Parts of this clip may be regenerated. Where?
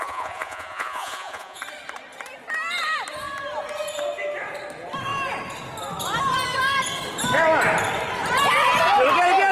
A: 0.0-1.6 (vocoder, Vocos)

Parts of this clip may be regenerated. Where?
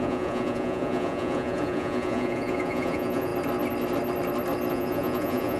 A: 0.0-3.3 (vocoder, Vocos); 4.7-5.6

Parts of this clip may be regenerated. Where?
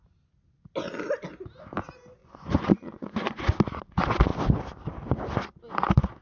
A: 2.2-3.4 (vocoder, Vocos)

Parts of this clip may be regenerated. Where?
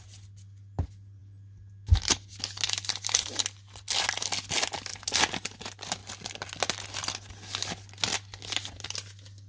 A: none